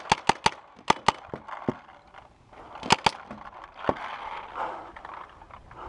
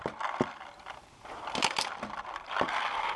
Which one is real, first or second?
first